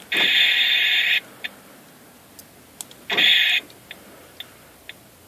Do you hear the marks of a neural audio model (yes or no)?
no